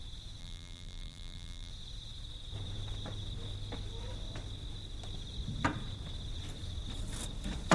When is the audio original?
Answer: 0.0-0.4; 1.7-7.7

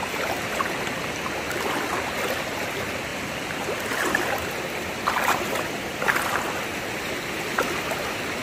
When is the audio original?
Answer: 0.0-3.1; 4.3-8.4

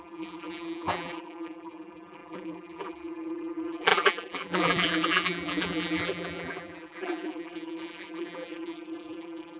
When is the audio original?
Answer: none

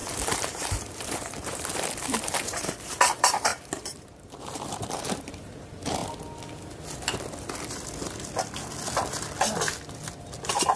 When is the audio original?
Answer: 6.0-10.8

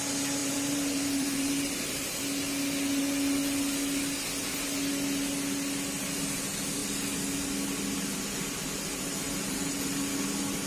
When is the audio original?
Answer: 0.0-0.4; 2.2-10.7

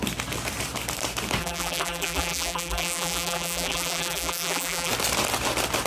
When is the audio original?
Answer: 0.0-1.4; 4.9-5.9